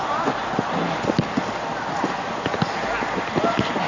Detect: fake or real real